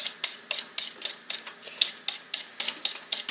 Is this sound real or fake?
real